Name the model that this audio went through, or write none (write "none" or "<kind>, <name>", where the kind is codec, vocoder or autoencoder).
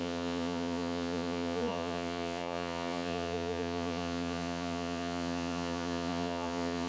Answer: vocoder, Vocos